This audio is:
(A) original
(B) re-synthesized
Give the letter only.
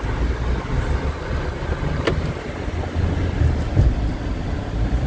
A